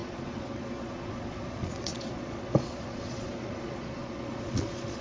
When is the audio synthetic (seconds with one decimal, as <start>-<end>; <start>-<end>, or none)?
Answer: 0.0-5.0